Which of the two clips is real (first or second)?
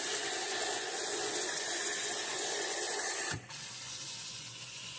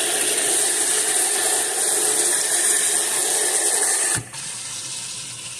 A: second